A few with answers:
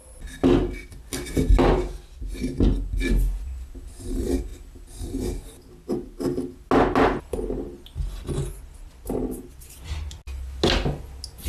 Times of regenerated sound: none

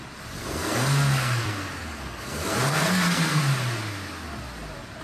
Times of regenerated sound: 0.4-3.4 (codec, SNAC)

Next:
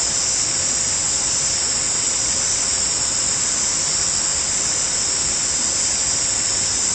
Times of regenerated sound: none

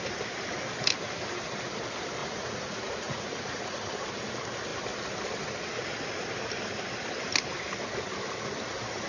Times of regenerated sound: 2.2-3.9 (vocoder, Vocos)